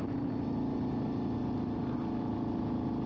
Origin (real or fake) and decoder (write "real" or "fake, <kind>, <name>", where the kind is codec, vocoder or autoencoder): real